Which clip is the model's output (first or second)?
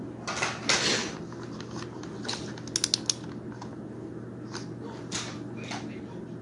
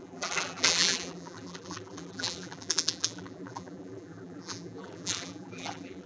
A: second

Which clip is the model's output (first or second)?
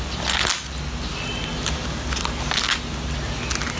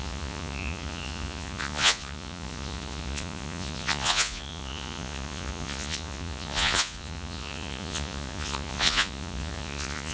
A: second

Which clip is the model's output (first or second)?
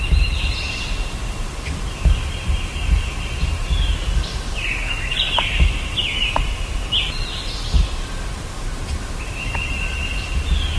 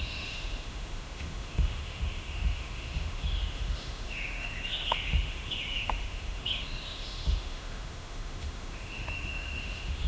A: second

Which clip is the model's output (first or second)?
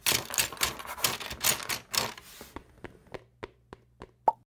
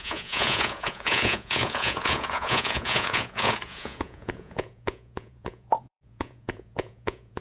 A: second